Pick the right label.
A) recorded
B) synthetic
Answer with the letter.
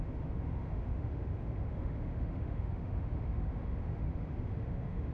B